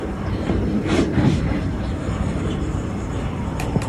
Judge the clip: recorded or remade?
remade